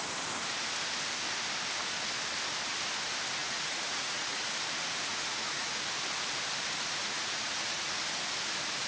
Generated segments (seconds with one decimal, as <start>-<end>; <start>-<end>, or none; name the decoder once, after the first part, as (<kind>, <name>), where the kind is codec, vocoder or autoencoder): 3.4-4.5 (vocoder, Vocos); 5.1-5.7; 7.0-8.0